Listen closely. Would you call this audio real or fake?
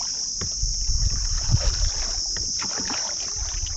real